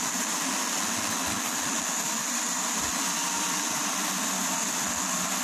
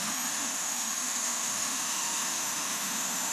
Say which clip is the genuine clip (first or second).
first